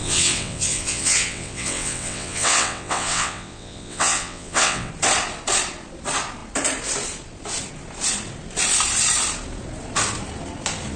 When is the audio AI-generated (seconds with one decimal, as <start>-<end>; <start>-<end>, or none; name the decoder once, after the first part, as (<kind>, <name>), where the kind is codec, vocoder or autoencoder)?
0.0-4.9 (vocoder, WaveNeXt)